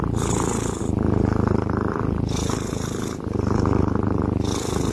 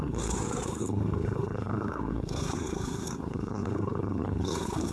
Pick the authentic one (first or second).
first